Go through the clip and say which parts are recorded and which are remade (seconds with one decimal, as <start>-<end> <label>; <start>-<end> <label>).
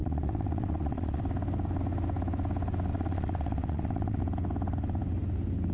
0.0-1.2 remade; 1.2-2.9 recorded; 2.9-4.2 remade; 4.2-5.7 recorded